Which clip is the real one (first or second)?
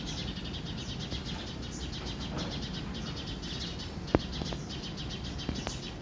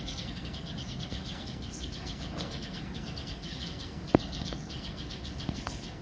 first